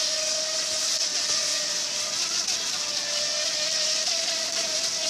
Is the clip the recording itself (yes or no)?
yes